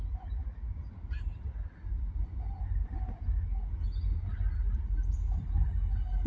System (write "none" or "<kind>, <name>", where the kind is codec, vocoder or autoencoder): none